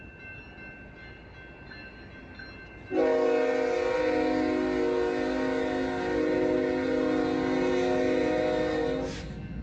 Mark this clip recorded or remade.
recorded